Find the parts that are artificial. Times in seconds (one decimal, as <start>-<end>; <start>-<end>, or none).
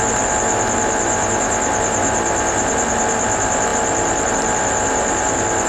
none